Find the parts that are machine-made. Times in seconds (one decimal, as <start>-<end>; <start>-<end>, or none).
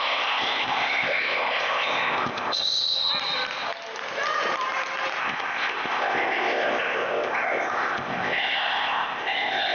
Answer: 0.0-3.1; 5.2-9.7